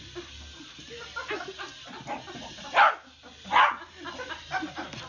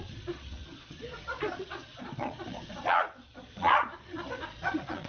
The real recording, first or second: first